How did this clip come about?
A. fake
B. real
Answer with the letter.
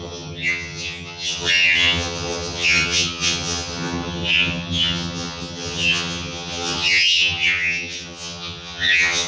A